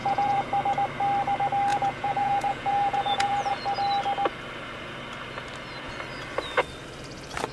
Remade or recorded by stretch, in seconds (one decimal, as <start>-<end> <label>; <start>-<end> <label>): 0.0-0.5 remade; 0.5-1.7 recorded; 1.7-3.6 remade; 3.6-7.5 recorded